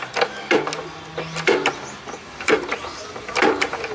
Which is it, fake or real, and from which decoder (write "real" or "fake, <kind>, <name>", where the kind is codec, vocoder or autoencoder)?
real